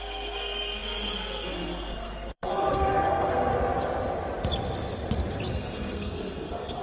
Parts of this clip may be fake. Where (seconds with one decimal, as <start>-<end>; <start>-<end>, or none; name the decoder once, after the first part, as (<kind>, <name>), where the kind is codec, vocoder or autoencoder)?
0.0-3.5 (codec, SNAC); 5.5-6.8